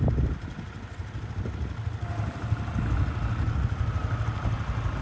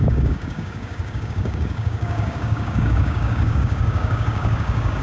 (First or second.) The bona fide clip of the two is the first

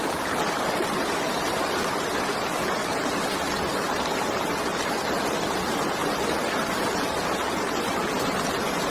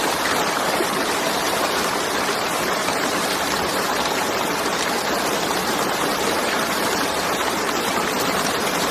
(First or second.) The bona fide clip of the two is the first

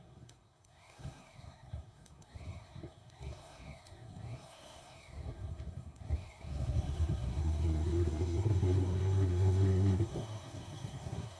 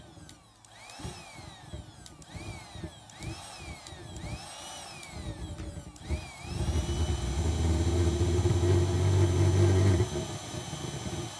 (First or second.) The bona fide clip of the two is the second